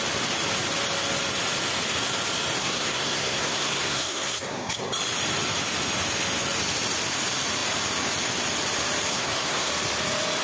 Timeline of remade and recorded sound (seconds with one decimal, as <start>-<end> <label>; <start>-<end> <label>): 0.0-2.6 recorded; 2.6-4.8 remade; 4.8-9.1 recorded; 9.1-9.7 remade; 9.7-10.4 recorded